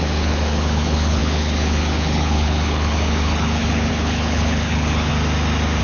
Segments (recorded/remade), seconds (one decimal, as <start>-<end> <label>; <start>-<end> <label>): 0.0-5.1 remade; 5.1-5.8 recorded

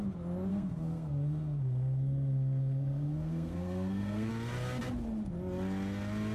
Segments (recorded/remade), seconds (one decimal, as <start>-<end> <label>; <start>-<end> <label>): 0.0-0.5 recorded; 0.5-4.3 remade; 4.3-6.3 recorded

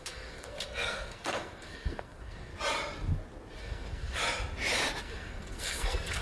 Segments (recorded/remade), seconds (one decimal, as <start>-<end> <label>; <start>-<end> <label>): 0.0-2.5 remade; 2.5-3.6 recorded; 3.6-4.2 remade; 4.2-5.0 recorded; 5.0-6.2 remade

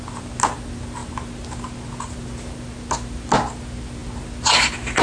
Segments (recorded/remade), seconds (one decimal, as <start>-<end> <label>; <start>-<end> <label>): 0.0-5.0 recorded

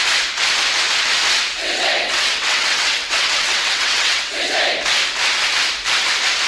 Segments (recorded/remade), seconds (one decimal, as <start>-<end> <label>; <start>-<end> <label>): 0.0-1.6 recorded; 1.6-4.5 remade; 4.5-6.5 recorded

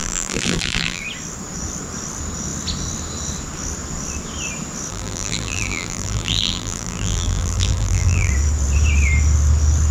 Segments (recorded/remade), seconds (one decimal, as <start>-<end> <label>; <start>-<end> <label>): 0.0-1.0 remade; 1.0-4.9 recorded; 4.9-8.3 remade; 8.3-9.9 recorded

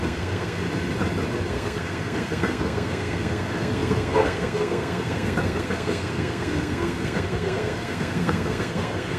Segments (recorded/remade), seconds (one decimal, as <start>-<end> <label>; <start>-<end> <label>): 0.0-0.6 remade; 0.6-1.5 recorded; 1.5-9.2 remade

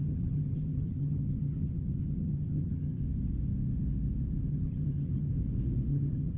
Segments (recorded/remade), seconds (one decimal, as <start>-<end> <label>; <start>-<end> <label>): 0.0-3.0 remade; 3.0-4.5 recorded; 4.5-5.3 remade; 5.3-5.9 recorded; 5.9-6.4 remade